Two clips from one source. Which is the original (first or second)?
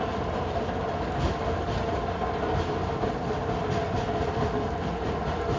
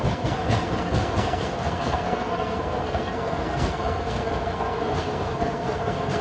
first